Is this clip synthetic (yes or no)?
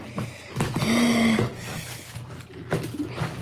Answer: no